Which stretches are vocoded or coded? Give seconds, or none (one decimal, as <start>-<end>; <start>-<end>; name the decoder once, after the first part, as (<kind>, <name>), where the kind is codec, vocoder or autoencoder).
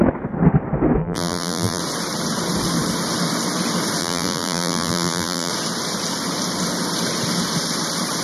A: 1.0-1.8 (vocoder, BigVGAN v2); 4.0-5.5